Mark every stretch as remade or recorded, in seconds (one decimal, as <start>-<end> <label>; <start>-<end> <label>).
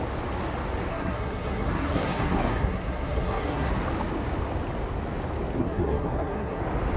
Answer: 0.0-0.9 recorded; 0.9-3.7 remade; 3.7-5.6 recorded; 5.6-6.6 remade; 6.6-7.0 recorded